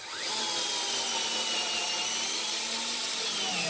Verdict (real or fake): real